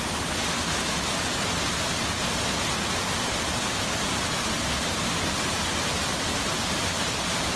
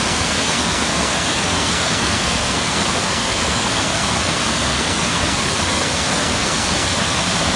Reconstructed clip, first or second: second